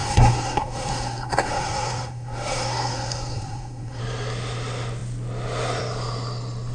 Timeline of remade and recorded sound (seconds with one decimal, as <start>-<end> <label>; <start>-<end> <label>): 0.0-4.0 remade; 4.0-6.7 recorded